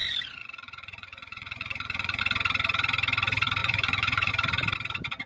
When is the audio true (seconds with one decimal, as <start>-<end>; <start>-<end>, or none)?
2.2-3.6; 4.3-5.3